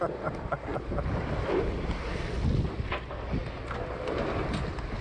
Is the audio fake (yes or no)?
no